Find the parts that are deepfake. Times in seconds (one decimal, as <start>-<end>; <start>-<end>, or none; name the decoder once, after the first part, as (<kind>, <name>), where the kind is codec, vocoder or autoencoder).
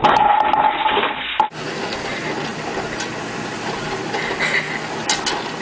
none